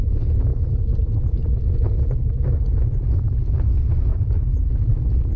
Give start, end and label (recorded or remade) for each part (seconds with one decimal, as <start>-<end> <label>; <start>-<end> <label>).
0.0-0.5 recorded; 0.5-1.7 remade; 1.7-4.1 recorded; 4.1-5.4 remade